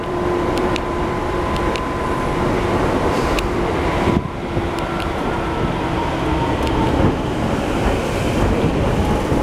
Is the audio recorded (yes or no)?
no